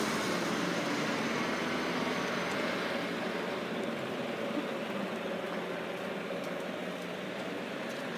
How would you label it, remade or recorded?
recorded